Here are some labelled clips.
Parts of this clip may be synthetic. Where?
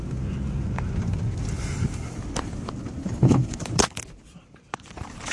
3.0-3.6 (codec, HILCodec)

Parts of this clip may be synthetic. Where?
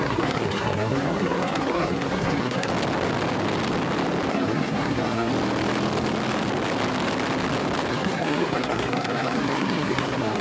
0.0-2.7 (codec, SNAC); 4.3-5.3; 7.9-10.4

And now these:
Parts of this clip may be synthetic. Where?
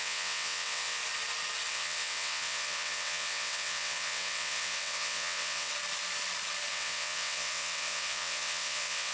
0.0-1.0 (vocoder, WaveNeXt); 1.7-5.7; 6.7-9.1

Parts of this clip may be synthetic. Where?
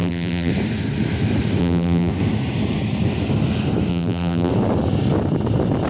0.0-0.5 (vocoder, BigVGAN v2); 1.6-2.1; 3.9-4.5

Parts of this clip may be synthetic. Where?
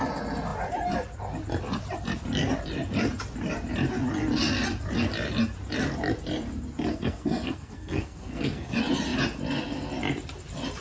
6.9-8.7 (codec, SNAC)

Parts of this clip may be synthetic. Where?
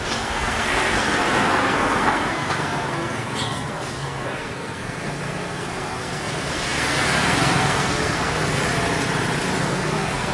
0.0-8.6 (codec, SNAC); 9.6-10.3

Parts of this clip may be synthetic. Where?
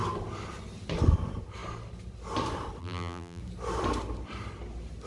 2.8-3.4 (vocoder, BigVGAN v2)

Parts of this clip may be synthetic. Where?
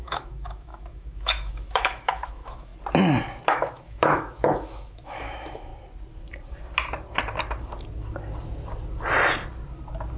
0.0-2.7 (autoencoder, DAC-VAE); 3.5-5.7